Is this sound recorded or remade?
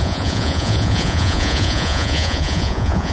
remade